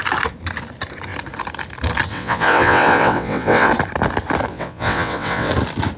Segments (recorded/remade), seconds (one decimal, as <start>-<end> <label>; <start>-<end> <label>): 0.0-2.1 recorded; 2.1-3.7 remade; 3.7-4.5 recorded; 4.5-5.5 remade; 5.5-6.0 recorded